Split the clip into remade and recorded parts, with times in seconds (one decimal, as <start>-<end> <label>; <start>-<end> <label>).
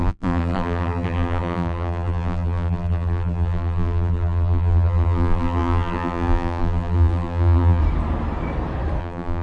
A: 0.0-7.8 remade; 7.8-9.0 recorded; 9.0-9.4 remade